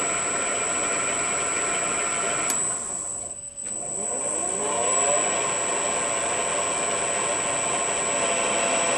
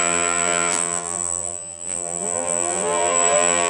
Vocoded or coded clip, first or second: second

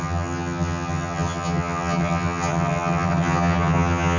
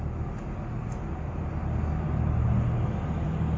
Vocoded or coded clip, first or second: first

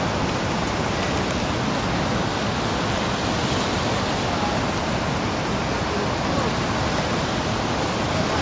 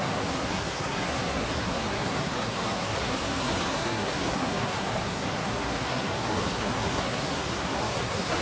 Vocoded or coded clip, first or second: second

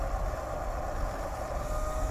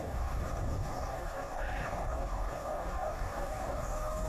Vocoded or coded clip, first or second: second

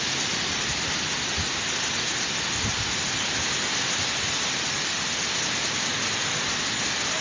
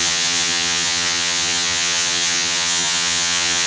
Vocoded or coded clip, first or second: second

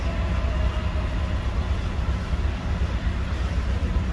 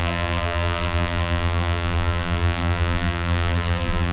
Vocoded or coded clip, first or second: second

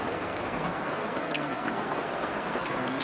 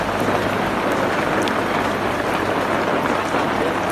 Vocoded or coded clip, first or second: first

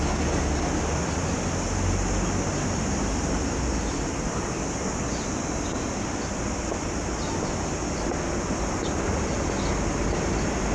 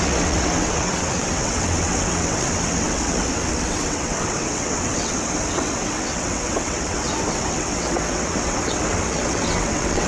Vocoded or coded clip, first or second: second